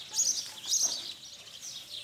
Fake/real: real